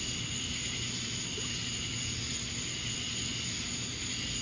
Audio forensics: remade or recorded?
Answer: recorded